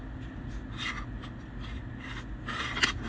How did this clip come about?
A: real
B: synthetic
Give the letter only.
A